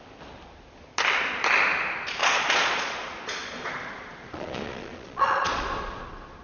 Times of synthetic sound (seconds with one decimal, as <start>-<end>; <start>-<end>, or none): 2.2-6.0